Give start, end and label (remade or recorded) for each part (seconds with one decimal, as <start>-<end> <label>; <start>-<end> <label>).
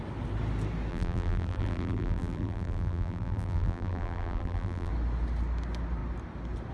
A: 0.0-0.9 recorded; 0.9-4.9 remade; 4.9-6.7 recorded